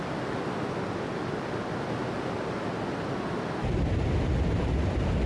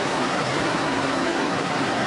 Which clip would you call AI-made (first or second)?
second